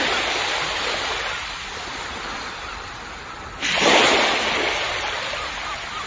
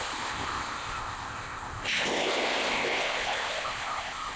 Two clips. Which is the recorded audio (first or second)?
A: first